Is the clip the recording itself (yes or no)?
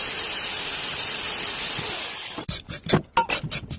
yes